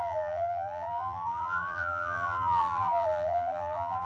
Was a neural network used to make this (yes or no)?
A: yes